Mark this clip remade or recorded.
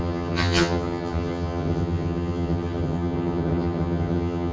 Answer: remade